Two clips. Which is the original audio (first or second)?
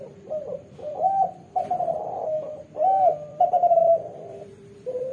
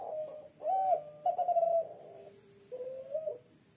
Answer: second